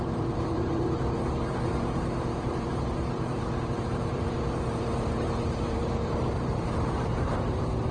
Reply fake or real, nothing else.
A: fake